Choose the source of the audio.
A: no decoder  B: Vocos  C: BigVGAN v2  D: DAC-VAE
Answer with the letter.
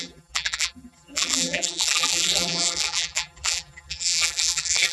C